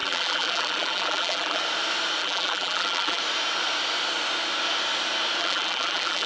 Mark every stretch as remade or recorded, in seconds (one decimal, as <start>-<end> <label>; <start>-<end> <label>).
0.0-1.6 remade; 1.6-2.2 recorded; 2.2-3.2 remade; 3.2-5.4 recorded; 5.4-6.3 remade